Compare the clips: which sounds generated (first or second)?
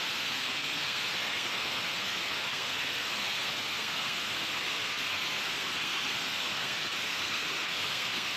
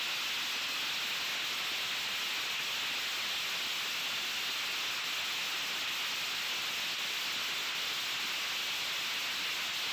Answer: first